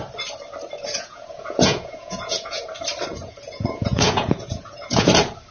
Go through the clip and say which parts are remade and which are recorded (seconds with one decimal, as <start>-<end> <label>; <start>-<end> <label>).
0.0-0.9 recorded; 0.9-2.6 remade; 2.6-3.1 recorded; 3.1-5.1 remade; 5.1-5.5 recorded